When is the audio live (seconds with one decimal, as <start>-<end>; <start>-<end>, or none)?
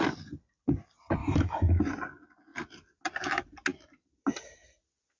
0.0-1.2; 1.8-5.2